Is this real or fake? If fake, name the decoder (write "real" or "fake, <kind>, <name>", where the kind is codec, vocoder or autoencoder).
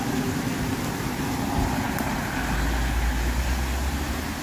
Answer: real